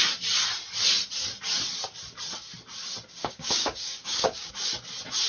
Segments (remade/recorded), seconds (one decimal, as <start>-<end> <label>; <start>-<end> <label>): 0.0-3.2 recorded; 3.2-4.5 remade; 4.5-5.3 recorded